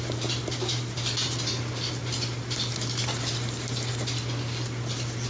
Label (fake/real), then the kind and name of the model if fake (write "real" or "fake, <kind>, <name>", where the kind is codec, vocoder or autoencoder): real